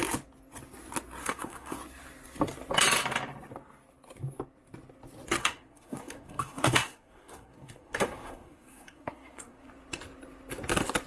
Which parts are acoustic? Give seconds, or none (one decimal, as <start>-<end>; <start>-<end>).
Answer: 0.0-1.2; 1.8-5.4; 9.7-11.1